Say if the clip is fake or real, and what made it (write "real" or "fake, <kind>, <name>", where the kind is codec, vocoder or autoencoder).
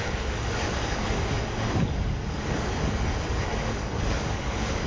fake, codec, DAC